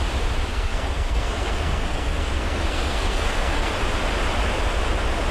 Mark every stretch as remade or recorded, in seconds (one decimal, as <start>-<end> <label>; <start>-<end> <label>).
0.0-0.5 recorded; 0.5-3.7 remade; 3.7-5.3 recorded